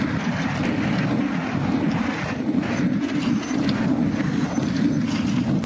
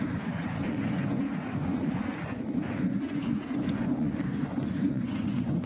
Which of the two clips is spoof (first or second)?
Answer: second